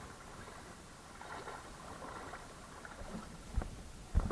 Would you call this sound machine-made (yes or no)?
no